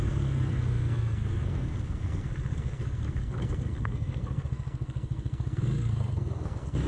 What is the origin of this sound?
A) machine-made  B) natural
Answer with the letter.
A